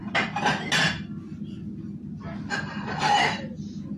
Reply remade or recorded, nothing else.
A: recorded